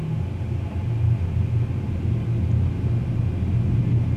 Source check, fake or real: real